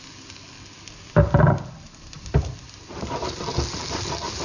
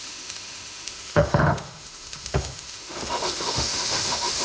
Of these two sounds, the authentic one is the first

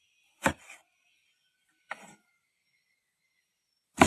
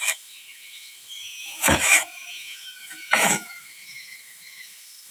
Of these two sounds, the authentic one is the first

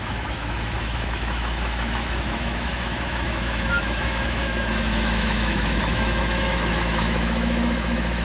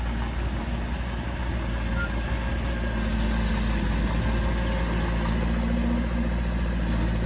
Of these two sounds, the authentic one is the second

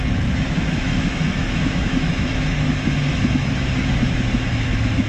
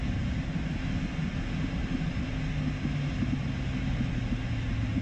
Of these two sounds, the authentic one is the second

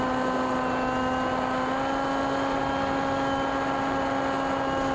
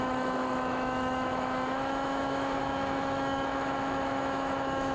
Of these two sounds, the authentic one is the first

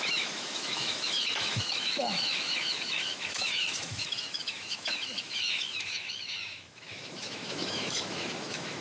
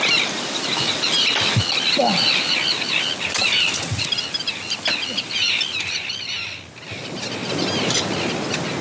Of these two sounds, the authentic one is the second